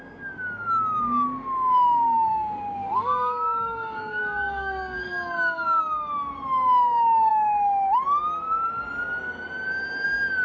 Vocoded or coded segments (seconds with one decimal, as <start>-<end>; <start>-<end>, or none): 2.3-5.8